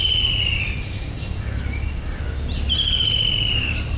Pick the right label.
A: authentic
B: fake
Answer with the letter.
A